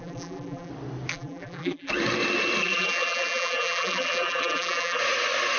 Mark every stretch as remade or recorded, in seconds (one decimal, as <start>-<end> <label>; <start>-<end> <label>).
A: 0.0-0.7 remade; 0.7-1.1 recorded; 1.1-1.9 remade; 1.9-2.6 recorded; 2.6-5.0 remade; 5.0-5.6 recorded